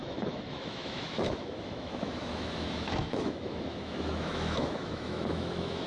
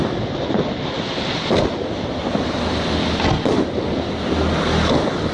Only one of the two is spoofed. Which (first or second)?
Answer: first